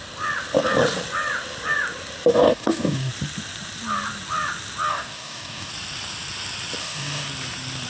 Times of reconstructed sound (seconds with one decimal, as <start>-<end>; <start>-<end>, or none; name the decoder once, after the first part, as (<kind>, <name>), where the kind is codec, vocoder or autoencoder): 2.3-3.1 (codec, DAC); 4.9-5.7; 6.8-7.3